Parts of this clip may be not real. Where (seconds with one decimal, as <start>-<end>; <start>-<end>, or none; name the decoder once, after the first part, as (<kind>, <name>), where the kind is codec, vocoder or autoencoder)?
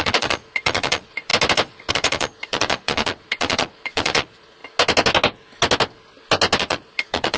0.0-1.3 (vocoder, Vocos); 1.9-4.6; 6.6-7.4